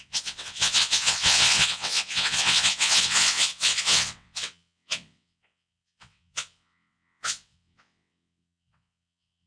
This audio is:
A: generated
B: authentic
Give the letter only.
A